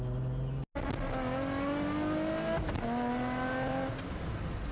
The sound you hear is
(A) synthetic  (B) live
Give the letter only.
B